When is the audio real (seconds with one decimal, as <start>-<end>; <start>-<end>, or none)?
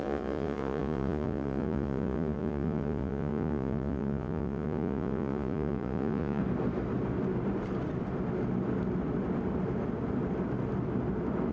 6.4-11.5